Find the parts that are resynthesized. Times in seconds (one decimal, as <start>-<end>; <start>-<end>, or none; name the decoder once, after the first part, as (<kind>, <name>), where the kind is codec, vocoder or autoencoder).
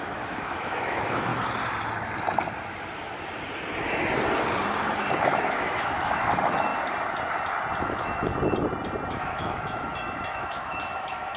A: 0.0-1.3 (autoencoder, DAC-VAE); 5.2-6.7; 7.8-8.3; 9.1-11.4